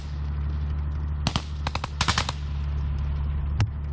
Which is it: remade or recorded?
recorded